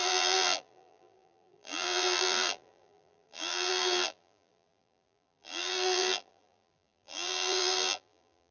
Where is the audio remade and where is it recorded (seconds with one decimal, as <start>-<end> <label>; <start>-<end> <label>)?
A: 0.0-8.5 remade